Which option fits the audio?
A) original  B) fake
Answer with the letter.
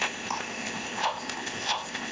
B